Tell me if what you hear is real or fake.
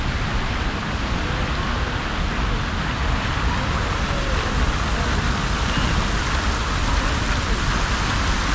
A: real